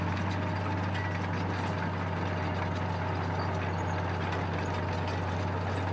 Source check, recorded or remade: recorded